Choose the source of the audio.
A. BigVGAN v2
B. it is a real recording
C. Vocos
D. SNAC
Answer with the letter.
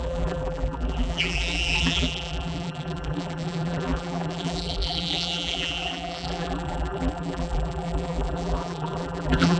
A